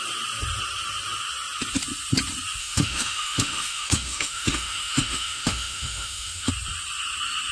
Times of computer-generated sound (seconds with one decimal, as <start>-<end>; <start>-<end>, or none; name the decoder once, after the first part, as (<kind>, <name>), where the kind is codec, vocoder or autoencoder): 2.6-6.5 (autoencoder, DAC-VAE)